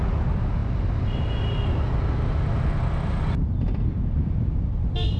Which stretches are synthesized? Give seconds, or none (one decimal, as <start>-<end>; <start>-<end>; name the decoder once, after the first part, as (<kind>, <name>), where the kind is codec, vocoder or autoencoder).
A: none

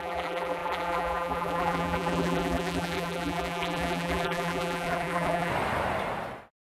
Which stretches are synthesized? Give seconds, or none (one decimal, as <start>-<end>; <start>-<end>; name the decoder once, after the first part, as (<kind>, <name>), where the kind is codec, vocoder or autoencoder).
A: 0.0-5.5 (vocoder, BigVGAN v2)

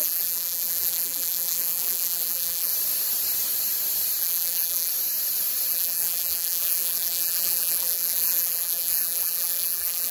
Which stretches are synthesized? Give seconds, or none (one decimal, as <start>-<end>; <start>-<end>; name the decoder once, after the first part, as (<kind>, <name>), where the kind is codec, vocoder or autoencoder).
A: 0.0-2.7 (vocoder, BigVGAN v2); 4.2-4.9; 5.7-10.1

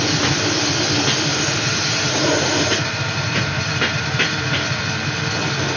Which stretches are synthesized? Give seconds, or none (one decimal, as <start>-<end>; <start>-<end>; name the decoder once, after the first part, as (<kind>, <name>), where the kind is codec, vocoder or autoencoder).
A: 1.3-4.8 (vocoder, BigVGAN v2)

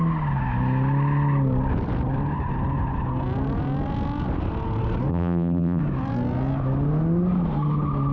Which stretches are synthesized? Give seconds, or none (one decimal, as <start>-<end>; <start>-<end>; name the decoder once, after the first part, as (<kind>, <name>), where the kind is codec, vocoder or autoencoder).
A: 5.1-5.8 (vocoder, BigVGAN v2)

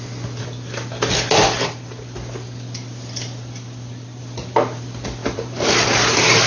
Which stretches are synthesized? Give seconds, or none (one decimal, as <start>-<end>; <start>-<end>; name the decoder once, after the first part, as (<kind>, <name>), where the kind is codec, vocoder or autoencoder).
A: 5.2-6.5 (vocoder, BigVGAN v2)